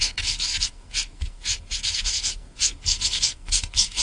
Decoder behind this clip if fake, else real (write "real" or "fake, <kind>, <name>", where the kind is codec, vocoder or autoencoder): fake, codec, SNAC